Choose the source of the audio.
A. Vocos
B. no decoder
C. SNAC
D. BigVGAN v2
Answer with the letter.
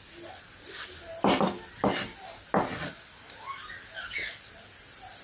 B